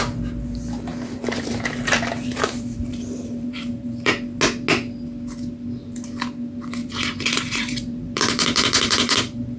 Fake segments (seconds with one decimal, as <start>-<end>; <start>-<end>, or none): 0.9-4.1; 6.8-9.6